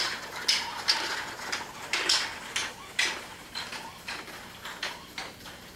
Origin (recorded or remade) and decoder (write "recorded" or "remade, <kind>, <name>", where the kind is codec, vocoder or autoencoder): recorded